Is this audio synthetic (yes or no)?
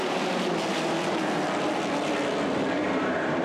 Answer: yes